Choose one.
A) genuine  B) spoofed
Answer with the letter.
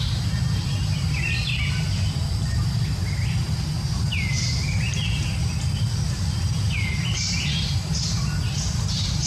A